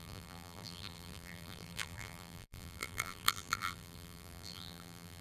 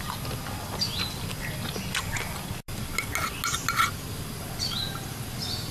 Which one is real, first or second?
second